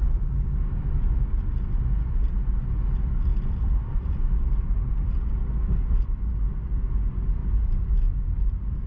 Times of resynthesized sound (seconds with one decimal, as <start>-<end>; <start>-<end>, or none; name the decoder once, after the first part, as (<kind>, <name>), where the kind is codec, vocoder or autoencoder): none